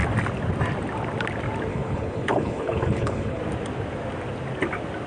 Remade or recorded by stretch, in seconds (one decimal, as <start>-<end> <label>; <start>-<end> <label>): 0.0-1.7 recorded; 1.7-3.4 remade; 3.4-5.1 recorded